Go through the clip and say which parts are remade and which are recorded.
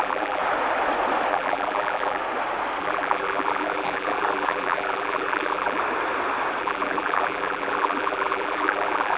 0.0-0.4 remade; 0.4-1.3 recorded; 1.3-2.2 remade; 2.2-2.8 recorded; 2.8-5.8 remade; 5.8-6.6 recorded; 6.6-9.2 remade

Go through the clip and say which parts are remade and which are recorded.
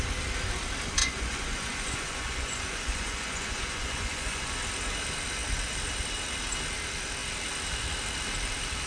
0.0-1.0 recorded; 1.0-4.5 remade; 4.5-8.9 recorded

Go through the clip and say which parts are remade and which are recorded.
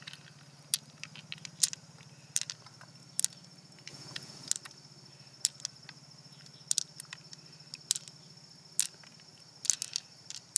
0.0-3.9 recorded; 3.9-4.5 remade; 4.5-10.6 recorded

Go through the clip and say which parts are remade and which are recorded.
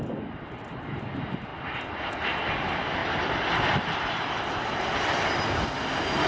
0.0-3.0 recorded; 3.0-5.3 remade; 5.3-6.3 recorded